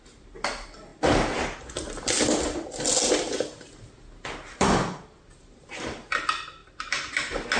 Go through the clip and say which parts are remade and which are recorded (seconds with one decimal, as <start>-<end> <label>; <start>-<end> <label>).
0.0-7.6 recorded